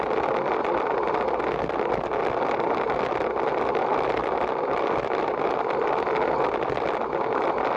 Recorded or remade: recorded